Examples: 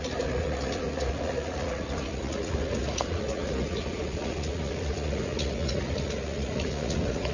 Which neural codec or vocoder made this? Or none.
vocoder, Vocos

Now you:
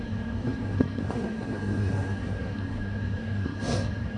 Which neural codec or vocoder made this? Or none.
codec, SNAC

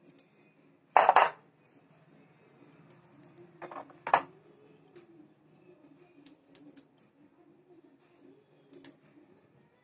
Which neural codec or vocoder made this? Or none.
none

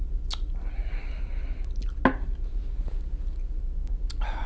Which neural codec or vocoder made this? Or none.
none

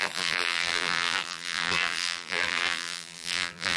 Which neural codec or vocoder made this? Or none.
vocoder, BigVGAN v2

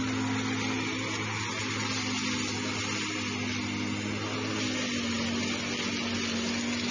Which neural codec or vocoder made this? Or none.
none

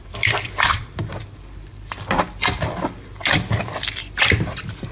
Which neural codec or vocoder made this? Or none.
none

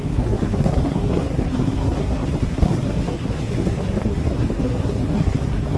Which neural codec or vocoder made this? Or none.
codec, SNAC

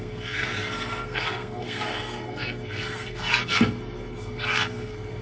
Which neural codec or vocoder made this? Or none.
codec, SNAC